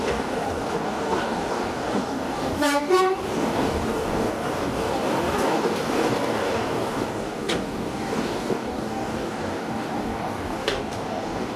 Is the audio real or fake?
fake